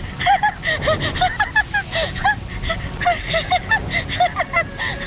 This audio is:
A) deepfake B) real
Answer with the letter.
B